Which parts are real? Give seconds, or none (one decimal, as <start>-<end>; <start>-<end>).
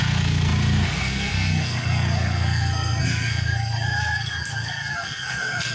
none